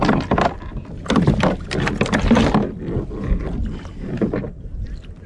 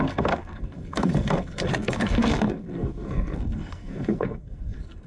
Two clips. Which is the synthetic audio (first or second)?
second